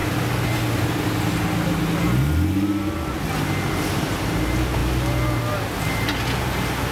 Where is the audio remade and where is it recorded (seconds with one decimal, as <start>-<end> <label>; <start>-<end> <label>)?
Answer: 0.0-6.9 recorded